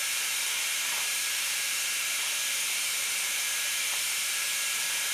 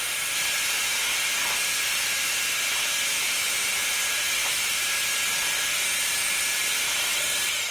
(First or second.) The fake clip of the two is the first